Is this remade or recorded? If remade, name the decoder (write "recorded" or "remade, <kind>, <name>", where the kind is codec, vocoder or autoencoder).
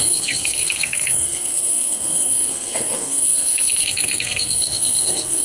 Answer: remade, codec, SNAC